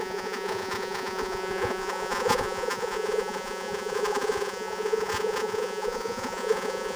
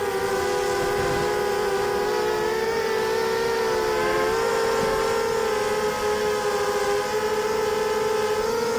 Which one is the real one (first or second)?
second